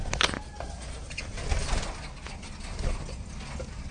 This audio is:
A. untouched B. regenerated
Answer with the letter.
A